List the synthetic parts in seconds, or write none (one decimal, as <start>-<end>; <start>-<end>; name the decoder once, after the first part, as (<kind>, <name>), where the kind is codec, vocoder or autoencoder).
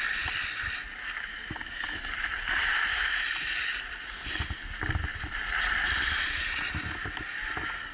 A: none